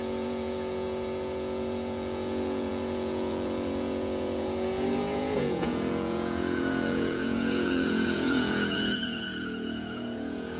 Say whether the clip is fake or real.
fake